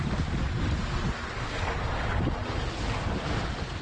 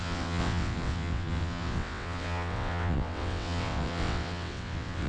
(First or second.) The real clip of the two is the first